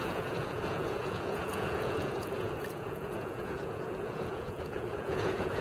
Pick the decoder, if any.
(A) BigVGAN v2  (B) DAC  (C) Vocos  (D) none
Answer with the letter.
C